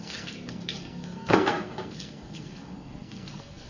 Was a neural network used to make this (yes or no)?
yes